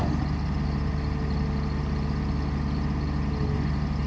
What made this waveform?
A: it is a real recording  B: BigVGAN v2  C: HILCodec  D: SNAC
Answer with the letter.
A